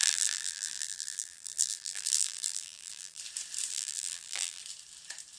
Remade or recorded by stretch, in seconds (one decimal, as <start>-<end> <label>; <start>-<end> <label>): 0.0-3.2 remade; 3.2-3.7 recorded; 3.7-4.6 remade; 4.6-5.4 recorded